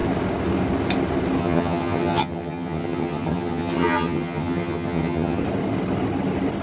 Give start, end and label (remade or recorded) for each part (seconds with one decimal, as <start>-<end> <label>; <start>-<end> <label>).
0.0-1.4 recorded; 1.4-5.4 remade; 5.4-6.6 recorded